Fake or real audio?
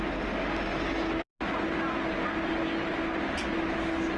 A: real